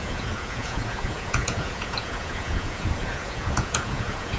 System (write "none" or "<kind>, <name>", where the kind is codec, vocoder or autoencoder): vocoder, Vocos